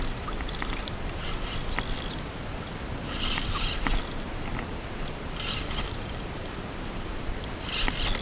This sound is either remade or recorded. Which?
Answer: remade